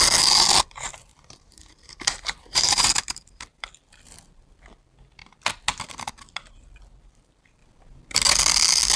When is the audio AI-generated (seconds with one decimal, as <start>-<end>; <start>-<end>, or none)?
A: 1.1-3.7